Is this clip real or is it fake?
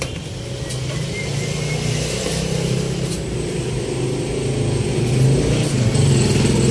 real